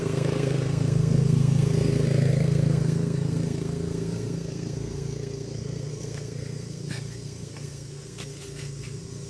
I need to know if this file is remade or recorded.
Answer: remade